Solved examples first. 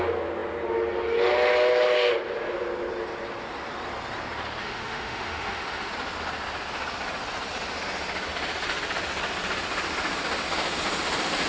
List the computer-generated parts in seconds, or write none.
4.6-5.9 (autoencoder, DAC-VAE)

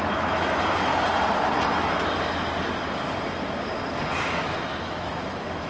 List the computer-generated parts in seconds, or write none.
0.0-0.9 (autoencoder, DAC-VAE); 4.3-5.7

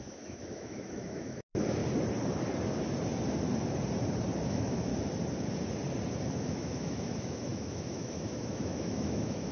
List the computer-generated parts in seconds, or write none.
0.0-1.8 (autoencoder, DAC-VAE); 4.5-4.9; 6.4-9.5

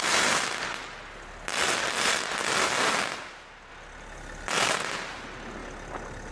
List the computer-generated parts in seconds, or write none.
none

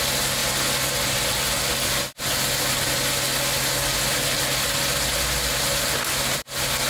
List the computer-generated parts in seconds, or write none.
none

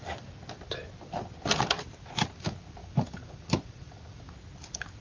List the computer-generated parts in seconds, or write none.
2.8-4.2 (vocoder, Vocos)